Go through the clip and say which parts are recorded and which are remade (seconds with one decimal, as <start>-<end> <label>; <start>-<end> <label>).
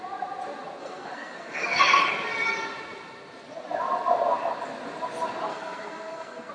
0.0-0.8 recorded; 0.8-1.8 remade; 1.8-5.5 recorded; 5.5-6.5 remade